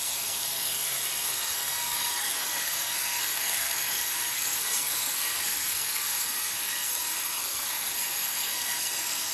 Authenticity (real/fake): fake